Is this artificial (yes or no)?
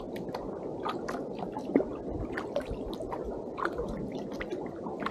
yes